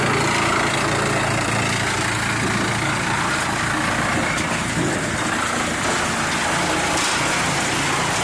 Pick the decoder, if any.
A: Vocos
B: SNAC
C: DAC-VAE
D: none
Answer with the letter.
D